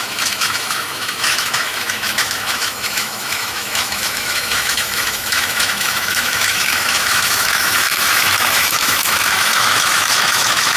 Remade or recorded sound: remade